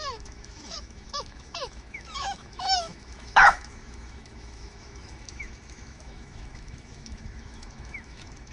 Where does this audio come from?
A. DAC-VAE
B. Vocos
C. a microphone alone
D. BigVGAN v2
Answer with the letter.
A